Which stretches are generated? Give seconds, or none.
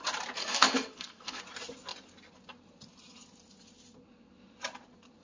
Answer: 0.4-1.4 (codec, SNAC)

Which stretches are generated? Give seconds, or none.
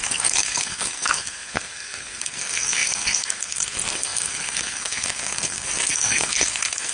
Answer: 0.0-6.9 (codec, SNAC)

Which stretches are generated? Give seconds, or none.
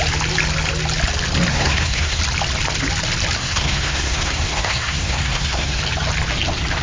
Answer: 1.5-2.2 (codec, SNAC); 3.4-5.8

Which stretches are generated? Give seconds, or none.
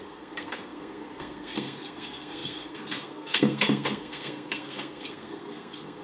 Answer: 0.0-6.0 (codec, SNAC)